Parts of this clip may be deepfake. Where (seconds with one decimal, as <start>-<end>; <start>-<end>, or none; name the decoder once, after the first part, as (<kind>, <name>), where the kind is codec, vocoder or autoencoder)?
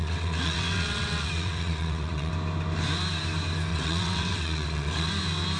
0.0-2.3 (vocoder, WaveNeXt); 3.7-5.1